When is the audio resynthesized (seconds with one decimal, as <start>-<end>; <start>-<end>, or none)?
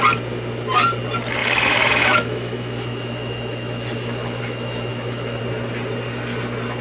1.4-5.4